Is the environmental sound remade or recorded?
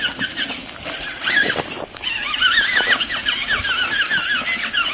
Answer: recorded